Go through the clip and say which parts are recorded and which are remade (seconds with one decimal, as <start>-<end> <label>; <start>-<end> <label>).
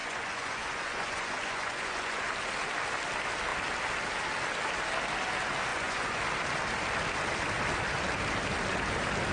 0.0-2.3 remade; 2.3-5.7 recorded; 5.7-6.2 remade; 6.2-9.3 recorded